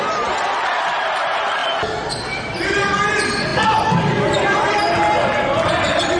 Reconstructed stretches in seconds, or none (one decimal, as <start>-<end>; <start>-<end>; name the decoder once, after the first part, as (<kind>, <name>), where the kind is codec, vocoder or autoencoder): none

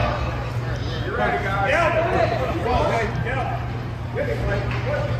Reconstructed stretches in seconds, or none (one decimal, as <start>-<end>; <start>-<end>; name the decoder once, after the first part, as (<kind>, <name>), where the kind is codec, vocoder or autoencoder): none

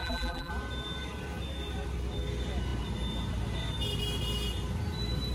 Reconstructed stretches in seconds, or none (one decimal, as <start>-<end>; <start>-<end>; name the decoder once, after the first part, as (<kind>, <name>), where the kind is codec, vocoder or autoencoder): 0.0-0.5 (vocoder, BigVGAN v2)